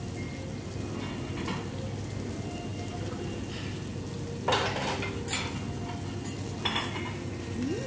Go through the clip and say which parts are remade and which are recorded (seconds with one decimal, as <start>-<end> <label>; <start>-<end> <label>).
0.0-7.9 recorded